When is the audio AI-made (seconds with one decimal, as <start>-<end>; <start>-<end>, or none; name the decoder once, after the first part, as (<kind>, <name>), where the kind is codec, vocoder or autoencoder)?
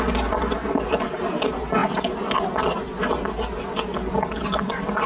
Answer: none